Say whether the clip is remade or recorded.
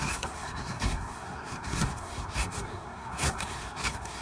remade